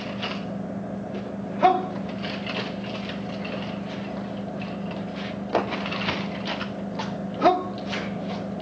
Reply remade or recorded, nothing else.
recorded